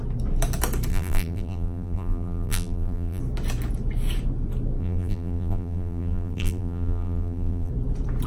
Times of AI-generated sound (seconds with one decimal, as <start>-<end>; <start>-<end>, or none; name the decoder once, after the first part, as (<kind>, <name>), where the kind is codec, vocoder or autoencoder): 0.9-3.2 (vocoder, BigVGAN v2); 4.8-7.7